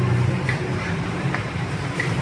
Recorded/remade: remade